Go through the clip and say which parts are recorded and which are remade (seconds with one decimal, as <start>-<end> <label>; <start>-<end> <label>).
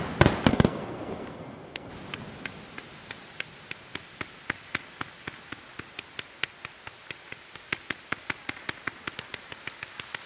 0.0-0.5 recorded; 0.5-1.9 remade; 1.9-10.3 recorded